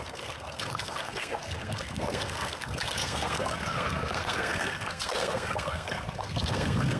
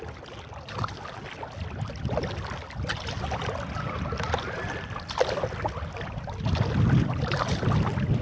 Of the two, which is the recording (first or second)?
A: second